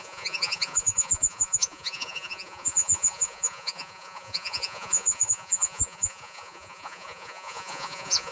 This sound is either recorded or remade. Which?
remade